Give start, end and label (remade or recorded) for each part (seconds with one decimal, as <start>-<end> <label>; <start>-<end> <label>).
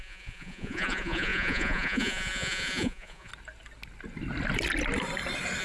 0.0-3.3 remade; 3.3-5.6 recorded